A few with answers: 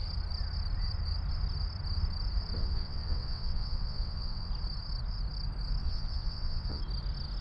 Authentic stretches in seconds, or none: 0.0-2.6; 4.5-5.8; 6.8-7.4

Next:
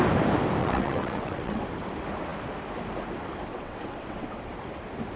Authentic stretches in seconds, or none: 0.0-0.6; 1.6-3.5; 4.5-5.2